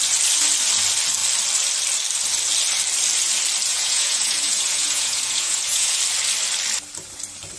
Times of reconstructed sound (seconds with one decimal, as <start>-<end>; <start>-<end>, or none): 3.7-6.0